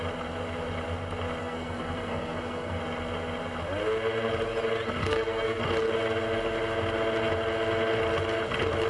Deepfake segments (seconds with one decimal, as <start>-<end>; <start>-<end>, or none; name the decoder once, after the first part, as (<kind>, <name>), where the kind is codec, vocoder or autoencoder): 1.4-2.8 (codec, SNAC); 5.0-5.6